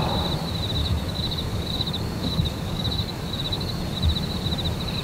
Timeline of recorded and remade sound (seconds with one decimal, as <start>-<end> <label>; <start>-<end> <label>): 0.0-0.8 recorded; 0.8-3.8 remade; 3.8-5.0 recorded